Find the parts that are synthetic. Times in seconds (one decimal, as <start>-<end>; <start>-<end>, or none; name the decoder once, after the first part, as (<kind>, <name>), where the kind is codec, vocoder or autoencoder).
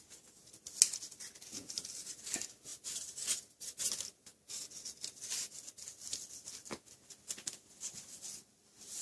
none